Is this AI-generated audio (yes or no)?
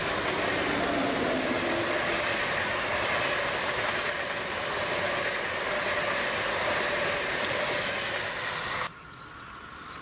no